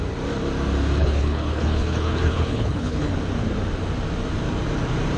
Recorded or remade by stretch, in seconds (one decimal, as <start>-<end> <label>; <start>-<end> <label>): 0.0-1.0 recorded; 1.0-3.1 remade; 3.1-5.2 recorded